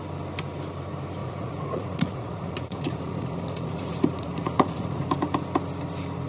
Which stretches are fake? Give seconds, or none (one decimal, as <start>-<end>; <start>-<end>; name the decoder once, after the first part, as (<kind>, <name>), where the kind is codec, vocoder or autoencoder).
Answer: 1.2-5.0 (vocoder, Vocos)